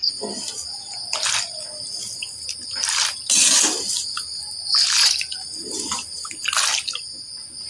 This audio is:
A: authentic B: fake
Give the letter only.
A